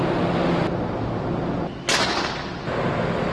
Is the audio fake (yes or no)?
no